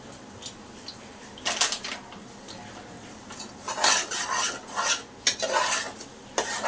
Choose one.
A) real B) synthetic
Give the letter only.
A